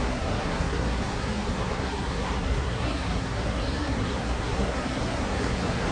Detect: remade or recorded remade